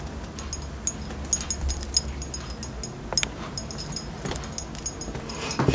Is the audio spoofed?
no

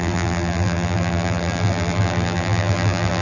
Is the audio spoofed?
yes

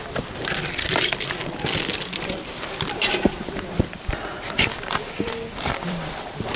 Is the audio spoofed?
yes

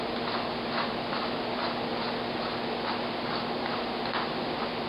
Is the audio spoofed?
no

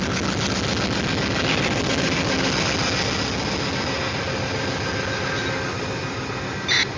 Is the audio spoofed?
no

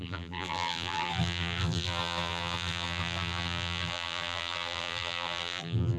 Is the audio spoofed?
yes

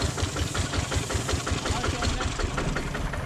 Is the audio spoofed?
no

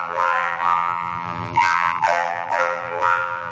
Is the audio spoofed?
yes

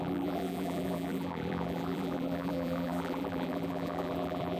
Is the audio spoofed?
yes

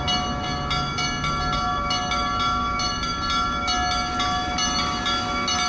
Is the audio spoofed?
no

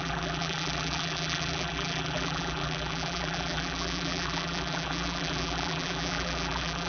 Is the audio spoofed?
yes